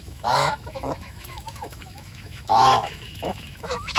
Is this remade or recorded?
remade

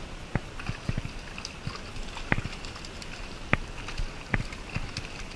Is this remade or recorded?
recorded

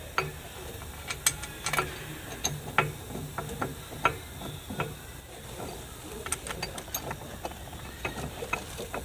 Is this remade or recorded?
recorded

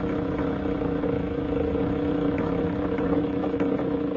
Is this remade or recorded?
remade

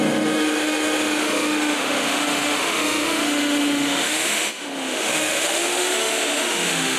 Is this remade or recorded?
remade